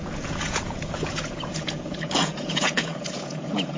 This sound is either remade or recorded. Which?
remade